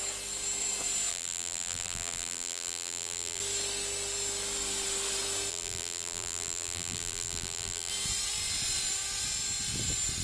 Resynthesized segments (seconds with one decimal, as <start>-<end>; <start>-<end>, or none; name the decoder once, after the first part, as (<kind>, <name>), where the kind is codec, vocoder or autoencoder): 1.1-3.4 (vocoder, BigVGAN v2); 5.5-7.9